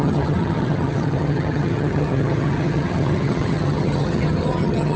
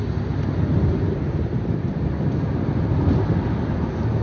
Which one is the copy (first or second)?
first